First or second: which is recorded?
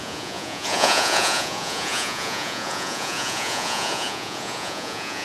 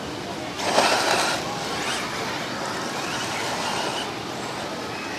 second